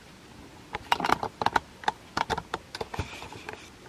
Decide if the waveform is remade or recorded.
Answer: recorded